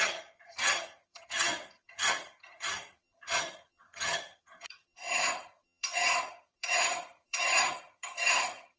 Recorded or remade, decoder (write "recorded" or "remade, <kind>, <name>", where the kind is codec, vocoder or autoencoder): remade, vocoder, HiFi-GAN